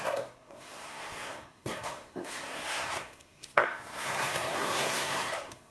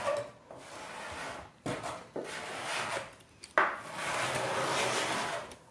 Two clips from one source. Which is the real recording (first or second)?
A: second